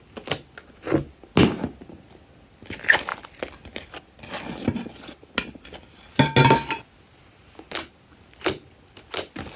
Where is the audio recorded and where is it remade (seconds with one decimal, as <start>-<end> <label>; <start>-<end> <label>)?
0.0-9.6 recorded